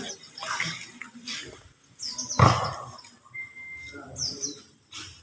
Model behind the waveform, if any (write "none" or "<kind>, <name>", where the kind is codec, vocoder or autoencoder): none